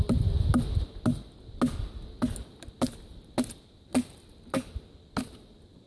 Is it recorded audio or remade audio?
recorded